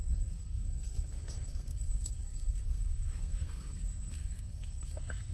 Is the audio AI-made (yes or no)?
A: yes